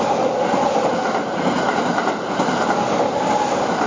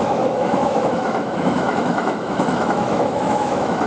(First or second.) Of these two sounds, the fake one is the second